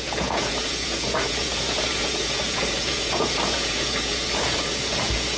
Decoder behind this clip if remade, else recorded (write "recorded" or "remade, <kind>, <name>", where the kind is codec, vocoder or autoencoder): remade, vocoder, Vocos